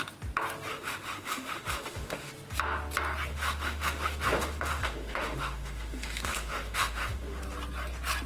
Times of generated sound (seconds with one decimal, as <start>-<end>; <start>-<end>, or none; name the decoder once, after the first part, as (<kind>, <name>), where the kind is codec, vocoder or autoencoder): 0.7-2.3 (autoencoder, DAC-VAE); 3.3-7.4